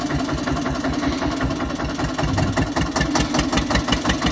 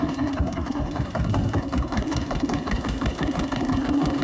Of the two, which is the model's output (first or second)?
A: second